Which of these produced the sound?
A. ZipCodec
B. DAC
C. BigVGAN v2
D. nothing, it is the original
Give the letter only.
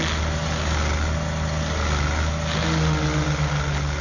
D